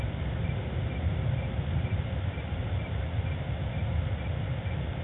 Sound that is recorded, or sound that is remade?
recorded